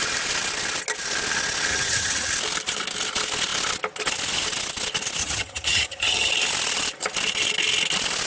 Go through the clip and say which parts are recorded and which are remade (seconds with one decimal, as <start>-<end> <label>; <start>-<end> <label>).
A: 0.0-1.7 recorded; 1.7-2.3 remade; 2.3-5.2 recorded; 5.2-6.3 remade; 6.3-8.3 recorded